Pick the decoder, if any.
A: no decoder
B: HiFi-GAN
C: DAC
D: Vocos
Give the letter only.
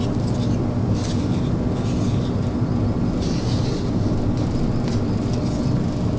A